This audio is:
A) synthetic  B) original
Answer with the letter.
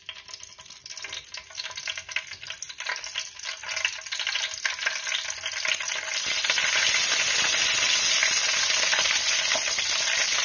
B